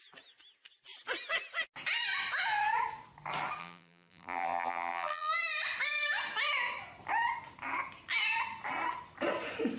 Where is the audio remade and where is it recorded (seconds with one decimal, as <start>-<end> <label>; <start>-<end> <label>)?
0.0-3.6 recorded; 3.6-5.3 remade; 5.3-9.8 recorded